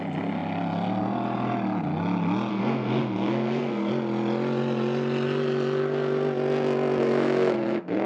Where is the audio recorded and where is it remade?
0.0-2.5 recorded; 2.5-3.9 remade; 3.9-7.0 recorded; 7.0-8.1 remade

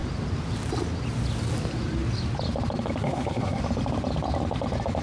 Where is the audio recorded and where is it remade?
0.0-3.0 recorded; 3.0-3.6 remade; 3.6-5.0 recorded